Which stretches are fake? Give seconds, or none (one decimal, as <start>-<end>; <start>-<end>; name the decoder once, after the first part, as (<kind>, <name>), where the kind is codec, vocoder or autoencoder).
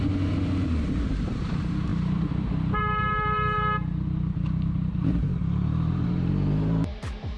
0.0-7.4 (vocoder, BigVGAN v2)